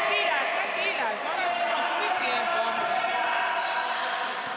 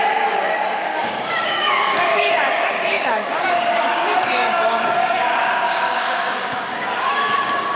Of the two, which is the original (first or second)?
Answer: first